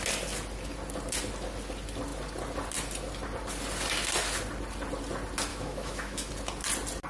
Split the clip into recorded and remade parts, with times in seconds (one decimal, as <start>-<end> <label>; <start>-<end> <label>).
0.0-5.5 recorded; 5.5-6.3 remade; 6.3-7.1 recorded